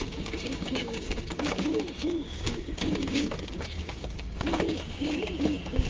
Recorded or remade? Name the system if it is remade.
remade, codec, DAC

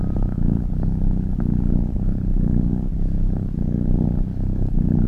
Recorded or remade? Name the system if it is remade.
remade, codec, DAC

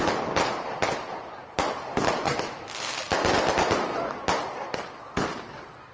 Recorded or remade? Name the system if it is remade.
recorded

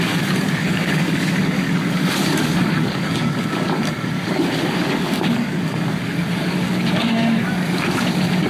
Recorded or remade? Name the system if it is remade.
remade, codec, DAC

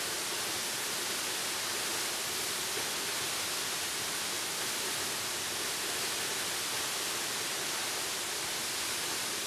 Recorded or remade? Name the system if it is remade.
recorded